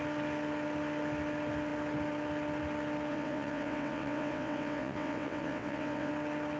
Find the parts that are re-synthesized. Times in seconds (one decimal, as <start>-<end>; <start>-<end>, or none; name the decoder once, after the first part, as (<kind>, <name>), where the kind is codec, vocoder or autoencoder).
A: 3.1-6.1 (vocoder, WaveNeXt)